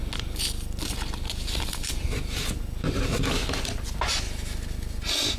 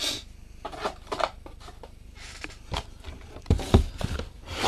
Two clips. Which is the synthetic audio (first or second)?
second